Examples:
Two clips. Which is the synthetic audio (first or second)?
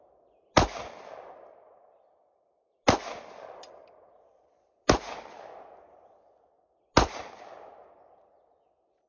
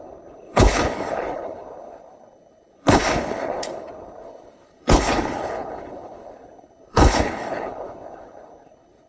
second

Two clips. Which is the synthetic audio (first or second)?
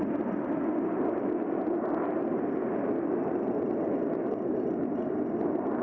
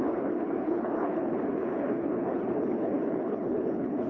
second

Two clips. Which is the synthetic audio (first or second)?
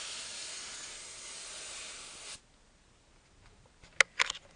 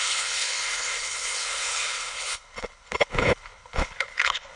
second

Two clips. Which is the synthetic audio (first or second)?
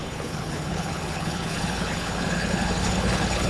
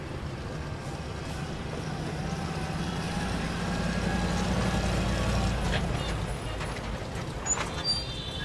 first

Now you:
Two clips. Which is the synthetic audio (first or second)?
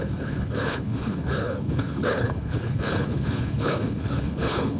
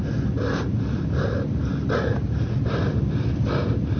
first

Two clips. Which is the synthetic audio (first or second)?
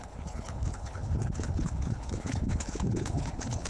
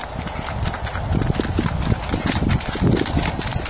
first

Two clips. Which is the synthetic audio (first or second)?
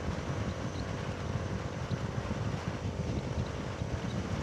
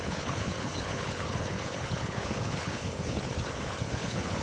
second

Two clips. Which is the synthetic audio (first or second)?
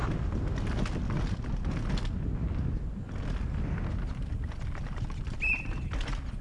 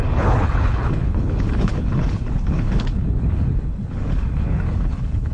second